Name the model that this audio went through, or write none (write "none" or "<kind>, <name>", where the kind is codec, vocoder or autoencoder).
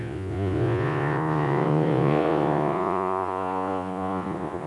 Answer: vocoder, Vocos